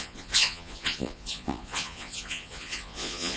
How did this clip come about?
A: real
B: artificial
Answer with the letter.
B